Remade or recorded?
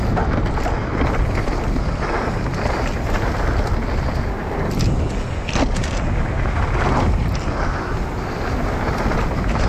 recorded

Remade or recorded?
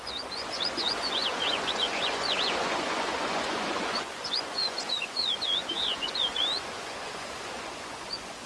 remade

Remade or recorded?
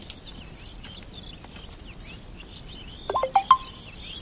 recorded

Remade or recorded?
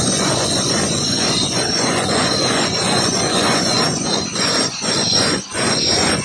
remade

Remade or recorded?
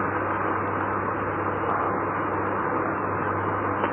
recorded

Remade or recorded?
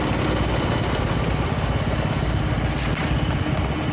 recorded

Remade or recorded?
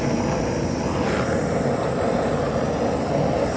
recorded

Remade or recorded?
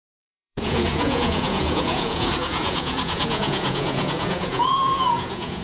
remade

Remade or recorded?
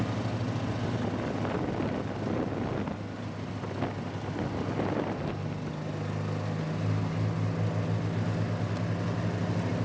recorded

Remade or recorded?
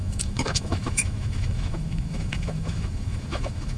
remade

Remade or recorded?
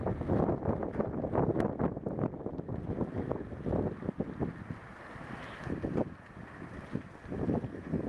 recorded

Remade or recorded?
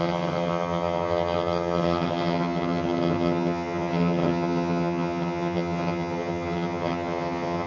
remade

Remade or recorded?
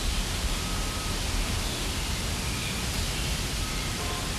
recorded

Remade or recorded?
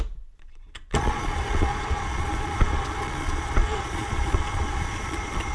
remade